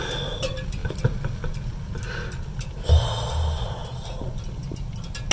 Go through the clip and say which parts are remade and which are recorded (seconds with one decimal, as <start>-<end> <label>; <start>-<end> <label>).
0.0-5.3 recorded